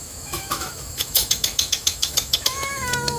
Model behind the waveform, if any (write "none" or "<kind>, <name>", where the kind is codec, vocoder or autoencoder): autoencoder, DAC-VAE